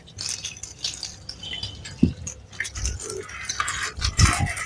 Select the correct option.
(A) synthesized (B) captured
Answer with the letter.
B